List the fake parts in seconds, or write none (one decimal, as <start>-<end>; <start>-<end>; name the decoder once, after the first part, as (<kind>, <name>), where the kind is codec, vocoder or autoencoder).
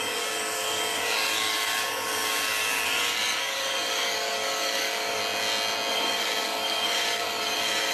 0.0-5.2 (codec, DAC); 5.9-7.9